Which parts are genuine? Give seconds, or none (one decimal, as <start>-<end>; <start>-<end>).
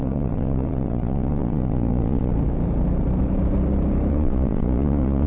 2.3-4.1